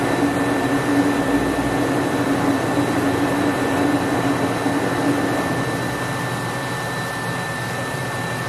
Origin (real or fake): real